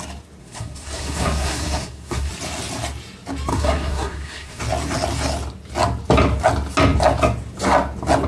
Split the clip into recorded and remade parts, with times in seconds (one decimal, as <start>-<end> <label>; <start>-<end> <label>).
0.0-0.4 recorded; 0.4-2.3 remade; 2.3-3.5 recorded; 3.5-4.6 remade; 4.6-8.3 recorded